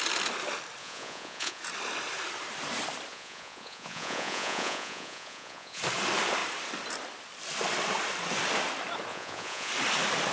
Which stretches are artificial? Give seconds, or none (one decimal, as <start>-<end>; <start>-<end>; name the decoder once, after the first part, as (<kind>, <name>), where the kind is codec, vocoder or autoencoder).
0.8-1.6 (vocoder, Vocos); 3.1-5.8; 9.1-9.7

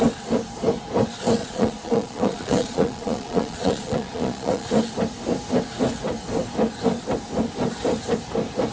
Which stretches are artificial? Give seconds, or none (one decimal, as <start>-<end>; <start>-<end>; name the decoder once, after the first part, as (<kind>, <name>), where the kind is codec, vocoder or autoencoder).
1.4-4.7 (vocoder, Vocos)

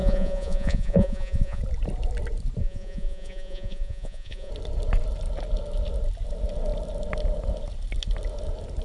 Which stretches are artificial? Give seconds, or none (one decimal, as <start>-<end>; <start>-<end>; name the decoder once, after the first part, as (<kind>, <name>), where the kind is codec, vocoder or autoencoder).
0.0-1.6 (vocoder, Vocos); 2.6-4.5